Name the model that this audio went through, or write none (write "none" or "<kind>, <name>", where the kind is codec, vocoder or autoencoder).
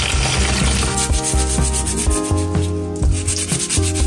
none